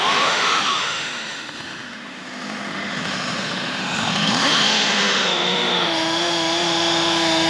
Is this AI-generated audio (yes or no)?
yes